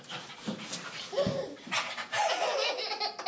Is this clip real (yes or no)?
yes